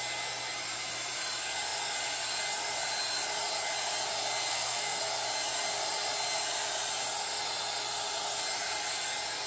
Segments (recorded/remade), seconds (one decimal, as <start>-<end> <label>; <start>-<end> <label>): 0.0-4.5 recorded; 4.5-5.0 remade; 5.0-9.5 recorded

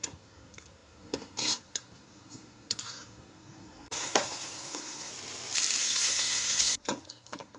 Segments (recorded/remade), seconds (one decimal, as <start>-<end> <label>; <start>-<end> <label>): 0.0-5.1 remade; 5.1-5.8 recorded; 5.8-7.6 remade

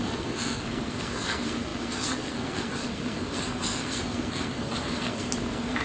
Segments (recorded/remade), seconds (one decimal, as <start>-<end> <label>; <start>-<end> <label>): 0.0-5.8 remade

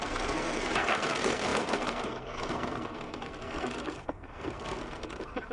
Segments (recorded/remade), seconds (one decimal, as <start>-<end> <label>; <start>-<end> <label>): 0.0-5.5 remade

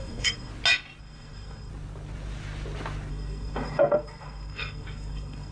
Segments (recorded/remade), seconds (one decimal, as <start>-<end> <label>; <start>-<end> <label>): 0.0-0.5 remade; 0.5-1.0 recorded; 1.0-1.7 remade; 1.7-3.1 recorded; 3.1-5.5 remade

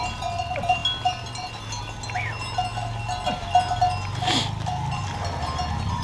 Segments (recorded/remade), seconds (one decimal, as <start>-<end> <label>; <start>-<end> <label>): 0.0-6.0 recorded

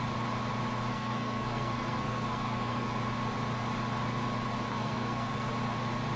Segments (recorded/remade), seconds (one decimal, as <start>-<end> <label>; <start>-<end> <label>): 0.0-0.9 recorded; 0.9-3.0 remade; 3.0-4.7 recorded; 4.7-5.5 remade; 5.5-6.2 recorded

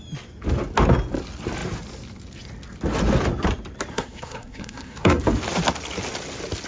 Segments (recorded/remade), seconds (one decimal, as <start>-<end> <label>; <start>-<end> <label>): 0.0-3.9 recorded; 3.9-5.2 remade; 5.2-6.7 recorded